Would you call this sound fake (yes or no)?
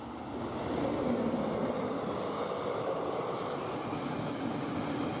no